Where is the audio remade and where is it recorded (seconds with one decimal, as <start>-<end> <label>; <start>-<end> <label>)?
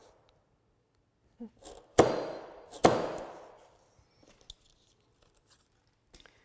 0.0-6.4 recorded